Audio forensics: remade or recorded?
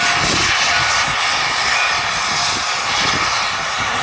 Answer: recorded